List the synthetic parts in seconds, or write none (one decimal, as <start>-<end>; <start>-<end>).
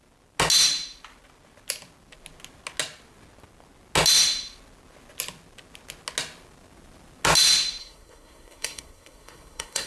7.8-9.9